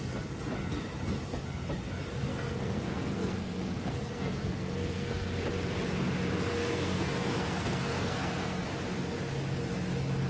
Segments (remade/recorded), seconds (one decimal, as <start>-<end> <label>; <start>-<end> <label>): 0.0-2.3 recorded; 2.3-5.4 remade; 5.4-6.6 recorded; 6.6-8.7 remade; 8.7-10.3 recorded